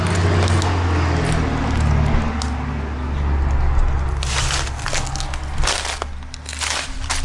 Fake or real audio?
real